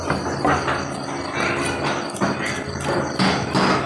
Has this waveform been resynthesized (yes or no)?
no